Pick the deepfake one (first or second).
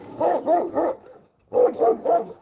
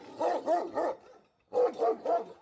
first